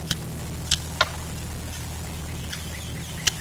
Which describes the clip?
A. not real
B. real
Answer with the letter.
B